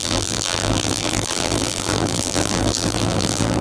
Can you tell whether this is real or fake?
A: fake